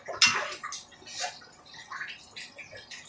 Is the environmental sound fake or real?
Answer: real